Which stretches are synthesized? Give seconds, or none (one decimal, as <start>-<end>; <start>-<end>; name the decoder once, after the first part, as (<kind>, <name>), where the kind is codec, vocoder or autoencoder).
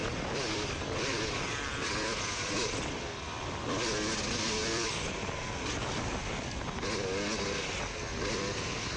0.0-3.4 (vocoder, BigVGAN v2); 4.6-5.4